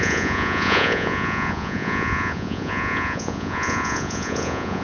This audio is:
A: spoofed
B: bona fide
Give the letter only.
A